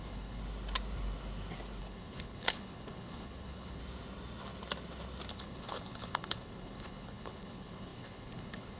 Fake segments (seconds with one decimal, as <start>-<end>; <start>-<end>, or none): 0.0-0.4; 1.8-3.8; 5.3-8.8